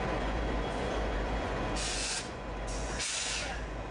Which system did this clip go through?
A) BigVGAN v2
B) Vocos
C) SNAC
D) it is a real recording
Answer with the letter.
B